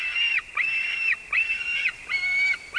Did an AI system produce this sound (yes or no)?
no